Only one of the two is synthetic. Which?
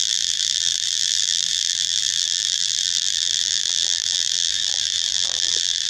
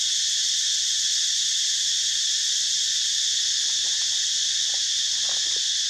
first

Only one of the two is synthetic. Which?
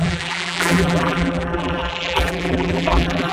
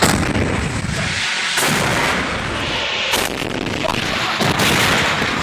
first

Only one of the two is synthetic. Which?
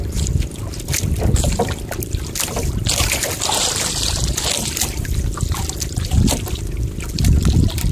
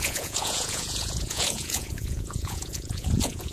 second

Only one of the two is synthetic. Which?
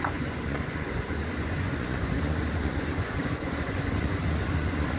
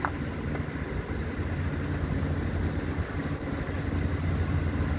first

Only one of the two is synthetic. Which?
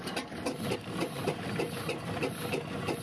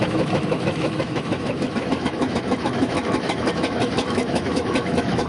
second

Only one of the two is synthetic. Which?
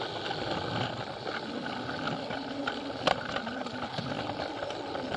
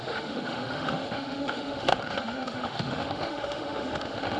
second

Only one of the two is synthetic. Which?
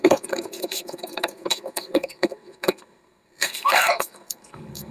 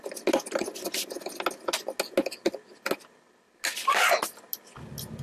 first